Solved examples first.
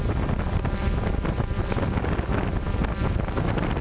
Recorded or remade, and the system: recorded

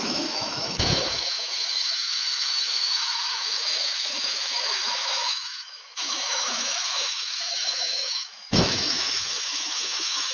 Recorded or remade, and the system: remade, autoencoder, DAC-VAE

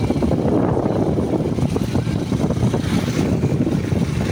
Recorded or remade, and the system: recorded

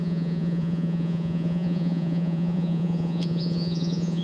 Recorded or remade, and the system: remade, vocoder, Vocos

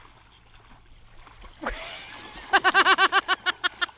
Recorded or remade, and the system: recorded